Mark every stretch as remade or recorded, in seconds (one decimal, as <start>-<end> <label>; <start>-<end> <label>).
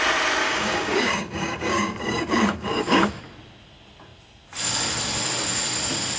0.0-0.4 recorded; 0.4-3.2 remade; 3.2-6.2 recorded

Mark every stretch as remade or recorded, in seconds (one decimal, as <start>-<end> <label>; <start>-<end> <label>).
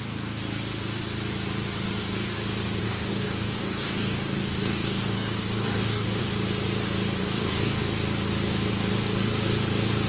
0.0-2.8 recorded; 2.8-6.2 remade; 6.2-7.2 recorded; 7.2-7.8 remade; 7.8-10.1 recorded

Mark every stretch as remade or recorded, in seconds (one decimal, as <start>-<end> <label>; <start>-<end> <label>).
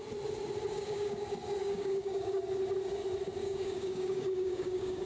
0.0-0.7 recorded; 0.7-1.2 remade; 1.2-1.6 recorded; 1.6-2.4 remade; 2.4-3.4 recorded; 3.4-5.1 remade